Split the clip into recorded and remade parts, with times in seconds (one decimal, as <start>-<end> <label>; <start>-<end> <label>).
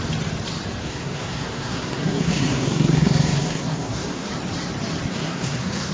0.0-0.8 recorded; 0.8-4.3 remade; 4.3-5.1 recorded; 5.1-5.9 remade